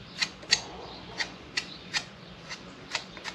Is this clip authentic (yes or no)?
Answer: no